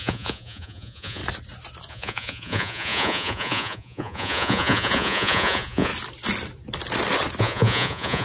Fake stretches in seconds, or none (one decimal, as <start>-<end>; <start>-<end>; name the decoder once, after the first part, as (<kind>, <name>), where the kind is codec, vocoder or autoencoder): 0.0-1.2 (vocoder, Vocos); 1.9-5.9; 7.4-8.2